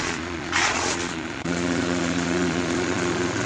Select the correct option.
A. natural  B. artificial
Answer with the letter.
B